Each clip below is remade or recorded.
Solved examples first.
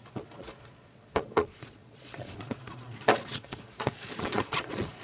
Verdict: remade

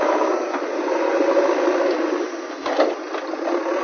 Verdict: recorded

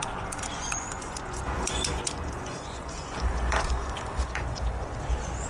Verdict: remade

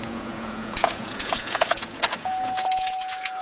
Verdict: remade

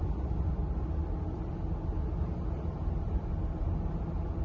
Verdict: recorded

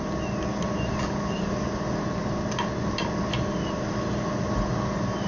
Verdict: recorded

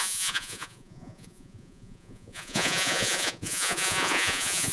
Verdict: remade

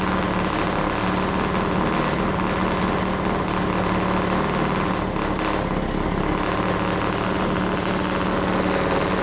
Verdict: recorded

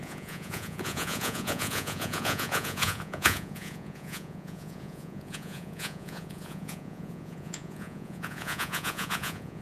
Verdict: remade